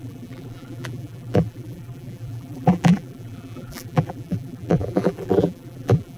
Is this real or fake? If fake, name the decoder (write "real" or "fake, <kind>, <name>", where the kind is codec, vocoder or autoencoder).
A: fake, vocoder, BigVGAN v2